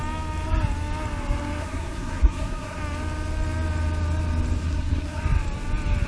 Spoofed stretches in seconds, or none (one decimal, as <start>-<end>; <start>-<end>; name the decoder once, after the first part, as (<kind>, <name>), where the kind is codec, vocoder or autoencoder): 1.6-2.8 (codec, SNAC); 4.6-5.2